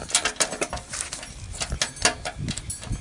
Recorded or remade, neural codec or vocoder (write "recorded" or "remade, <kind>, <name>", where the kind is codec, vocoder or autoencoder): recorded